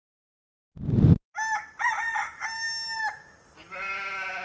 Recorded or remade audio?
recorded